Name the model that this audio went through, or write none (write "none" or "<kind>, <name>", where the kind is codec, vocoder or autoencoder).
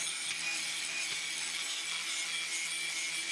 none